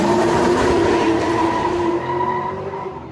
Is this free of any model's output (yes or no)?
no